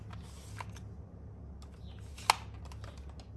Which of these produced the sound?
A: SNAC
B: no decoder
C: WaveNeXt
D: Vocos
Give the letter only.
B